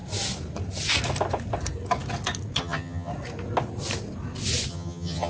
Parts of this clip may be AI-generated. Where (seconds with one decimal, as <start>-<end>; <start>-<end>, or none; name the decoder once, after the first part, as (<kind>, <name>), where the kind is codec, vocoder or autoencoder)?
2.6-3.1 (vocoder, HiFi-GAN); 4.7-5.3